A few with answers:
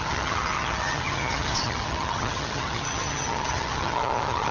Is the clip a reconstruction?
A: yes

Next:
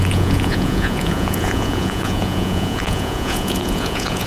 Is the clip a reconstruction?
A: yes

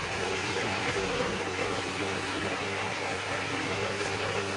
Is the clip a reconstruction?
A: yes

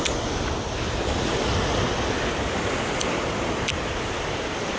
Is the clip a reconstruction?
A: no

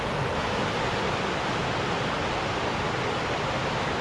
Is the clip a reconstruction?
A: no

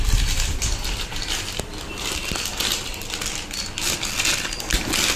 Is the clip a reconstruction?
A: no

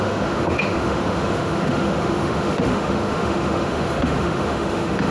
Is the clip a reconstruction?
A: yes